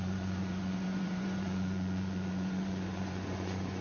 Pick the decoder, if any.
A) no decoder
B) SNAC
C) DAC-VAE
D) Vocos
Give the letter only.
D